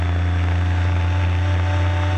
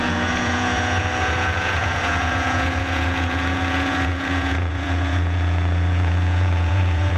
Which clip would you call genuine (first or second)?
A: first